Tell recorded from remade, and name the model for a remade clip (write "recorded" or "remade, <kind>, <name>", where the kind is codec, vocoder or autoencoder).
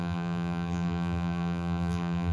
remade, vocoder, BigVGAN v2